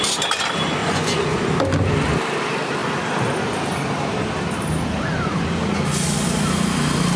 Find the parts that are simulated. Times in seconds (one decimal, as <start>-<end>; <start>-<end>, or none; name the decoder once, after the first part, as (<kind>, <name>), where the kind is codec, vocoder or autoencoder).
0.8-1.4 (vocoder, Vocos)